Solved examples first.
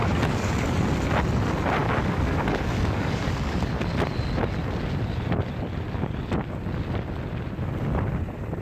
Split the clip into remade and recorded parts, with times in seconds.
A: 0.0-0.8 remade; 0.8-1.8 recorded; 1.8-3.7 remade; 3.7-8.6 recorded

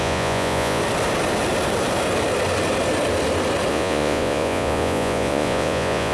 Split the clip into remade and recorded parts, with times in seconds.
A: 0.0-0.8 remade; 0.8-3.7 recorded; 3.7-6.1 remade

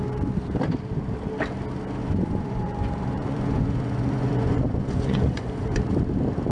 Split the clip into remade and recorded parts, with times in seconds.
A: 0.0-2.0 recorded; 2.0-5.9 remade; 5.9-6.5 recorded

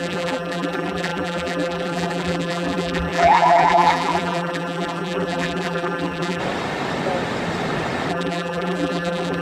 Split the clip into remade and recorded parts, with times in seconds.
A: 0.0-6.4 remade; 6.4-8.1 recorded; 8.1-9.4 remade

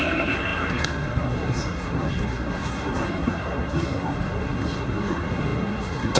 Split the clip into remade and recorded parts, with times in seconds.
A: 0.0-6.2 remade

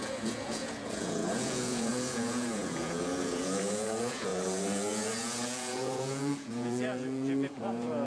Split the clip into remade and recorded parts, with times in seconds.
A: 0.0-8.1 remade

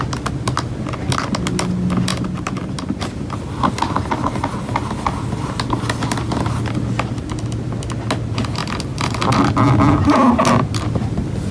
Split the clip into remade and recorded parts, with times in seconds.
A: 0.0-8.6 recorded; 8.6-9.2 remade; 9.2-11.5 recorded

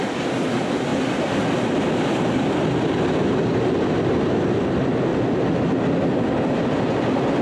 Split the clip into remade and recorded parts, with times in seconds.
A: 0.0-7.4 recorded